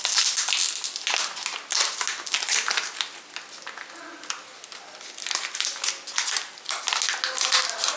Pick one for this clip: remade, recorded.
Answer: recorded